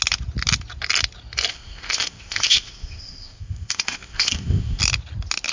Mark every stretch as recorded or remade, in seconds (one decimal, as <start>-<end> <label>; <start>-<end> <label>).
0.0-1.5 recorded; 1.5-4.8 remade; 4.8-5.5 recorded